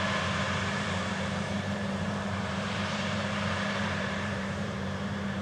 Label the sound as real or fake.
fake